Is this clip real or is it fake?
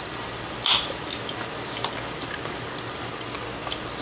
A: real